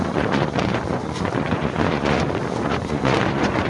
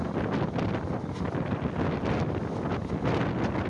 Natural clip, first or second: second